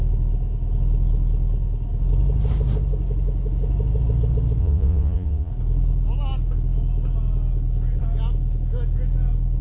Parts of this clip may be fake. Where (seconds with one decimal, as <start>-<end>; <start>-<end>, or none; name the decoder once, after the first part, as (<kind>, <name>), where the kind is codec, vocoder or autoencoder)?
4.6-5.5 (vocoder, Vocos)